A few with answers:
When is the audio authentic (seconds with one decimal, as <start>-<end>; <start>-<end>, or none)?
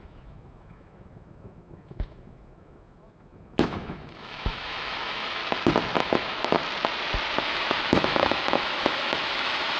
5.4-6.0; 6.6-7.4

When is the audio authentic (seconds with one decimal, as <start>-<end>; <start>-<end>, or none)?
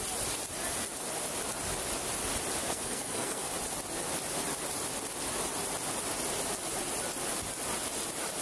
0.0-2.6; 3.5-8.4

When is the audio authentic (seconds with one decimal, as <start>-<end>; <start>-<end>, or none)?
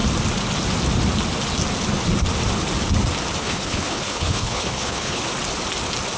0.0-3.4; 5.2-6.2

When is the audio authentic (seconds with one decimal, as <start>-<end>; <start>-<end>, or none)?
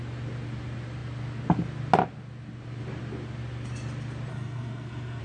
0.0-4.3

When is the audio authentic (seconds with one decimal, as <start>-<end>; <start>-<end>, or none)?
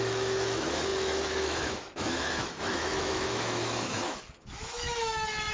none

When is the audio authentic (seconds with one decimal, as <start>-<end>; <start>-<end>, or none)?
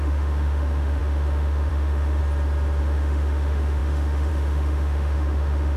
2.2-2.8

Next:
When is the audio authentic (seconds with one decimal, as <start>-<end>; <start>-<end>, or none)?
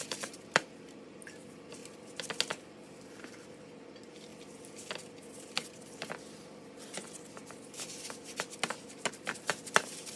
1.8-2.9; 4.3-9.1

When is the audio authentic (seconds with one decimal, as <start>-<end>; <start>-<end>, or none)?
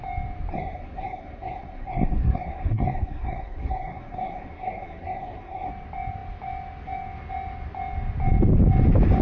0.0-0.5; 5.7-9.2